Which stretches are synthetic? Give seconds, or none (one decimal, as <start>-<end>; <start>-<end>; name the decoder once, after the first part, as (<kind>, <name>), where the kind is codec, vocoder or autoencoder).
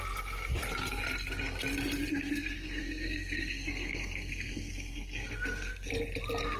2.1-5.9 (codec, SNAC)